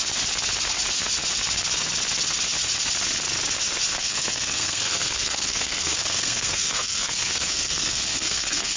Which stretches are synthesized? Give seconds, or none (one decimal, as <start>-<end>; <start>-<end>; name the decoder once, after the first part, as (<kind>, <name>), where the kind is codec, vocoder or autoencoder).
3.9-8.8 (codec, SNAC)